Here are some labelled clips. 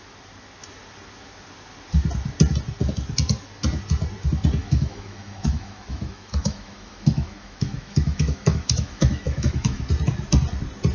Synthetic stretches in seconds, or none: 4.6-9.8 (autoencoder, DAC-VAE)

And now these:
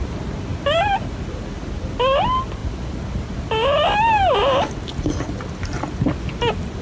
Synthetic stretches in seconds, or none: none